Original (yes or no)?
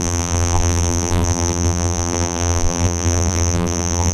no